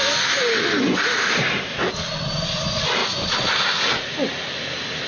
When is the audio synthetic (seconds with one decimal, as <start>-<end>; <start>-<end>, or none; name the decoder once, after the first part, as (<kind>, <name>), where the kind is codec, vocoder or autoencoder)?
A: none